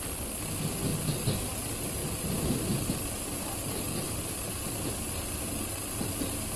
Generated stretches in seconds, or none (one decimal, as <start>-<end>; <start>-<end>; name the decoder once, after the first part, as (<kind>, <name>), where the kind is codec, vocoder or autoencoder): 0.0-0.9 (vocoder, BigVGAN v2); 1.5-6.6